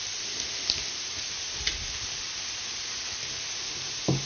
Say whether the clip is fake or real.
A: real